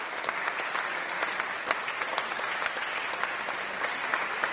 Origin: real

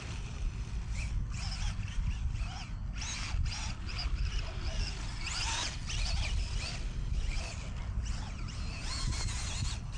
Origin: real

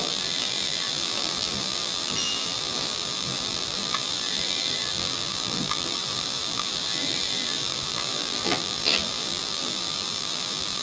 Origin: fake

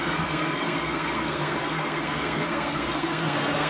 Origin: fake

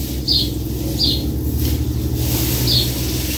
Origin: real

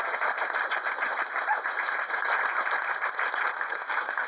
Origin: real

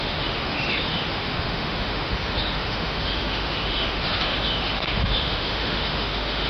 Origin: fake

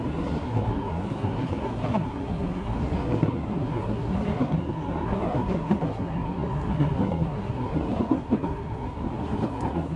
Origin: fake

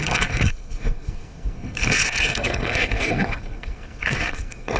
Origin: fake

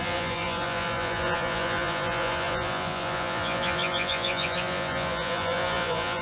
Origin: fake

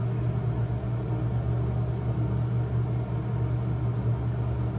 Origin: real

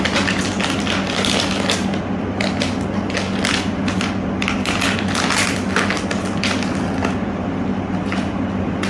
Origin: real